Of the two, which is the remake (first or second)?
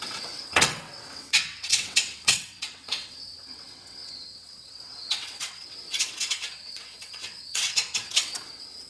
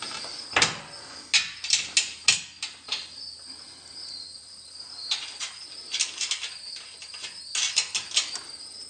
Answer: first